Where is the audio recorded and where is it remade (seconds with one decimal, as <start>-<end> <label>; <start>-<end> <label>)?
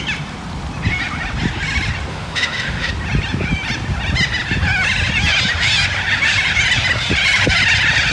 0.0-2.1 recorded; 2.1-2.9 remade; 2.9-8.1 recorded